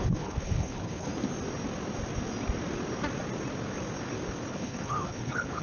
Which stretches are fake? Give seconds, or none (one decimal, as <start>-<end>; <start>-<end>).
0.0-1.1; 4.5-5.6